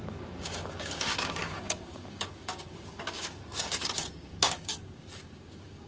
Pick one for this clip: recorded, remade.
remade